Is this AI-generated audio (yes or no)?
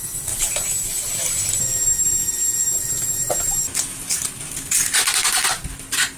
no